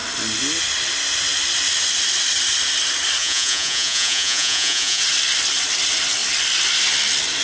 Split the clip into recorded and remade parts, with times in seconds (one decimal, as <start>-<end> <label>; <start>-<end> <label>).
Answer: 0.0-3.2 recorded; 3.2-5.0 remade; 5.0-7.4 recorded